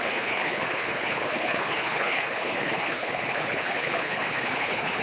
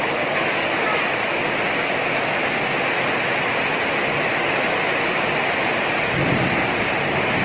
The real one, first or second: second